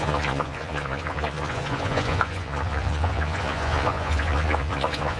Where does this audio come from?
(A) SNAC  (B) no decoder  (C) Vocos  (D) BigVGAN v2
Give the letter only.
C